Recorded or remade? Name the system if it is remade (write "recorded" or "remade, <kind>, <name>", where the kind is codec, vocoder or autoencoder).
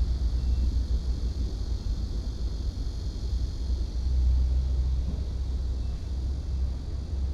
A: recorded